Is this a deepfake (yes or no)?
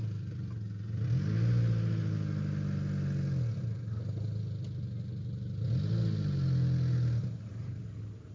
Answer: no